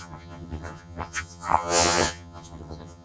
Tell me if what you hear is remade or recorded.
remade